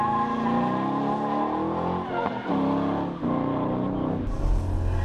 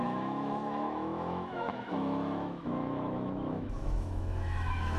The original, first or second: first